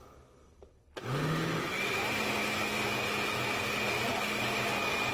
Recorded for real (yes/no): yes